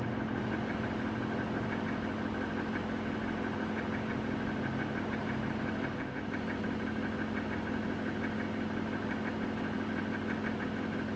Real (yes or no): yes